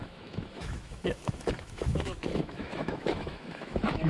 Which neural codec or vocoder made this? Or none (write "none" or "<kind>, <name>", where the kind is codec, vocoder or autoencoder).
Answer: autoencoder, DAC-VAE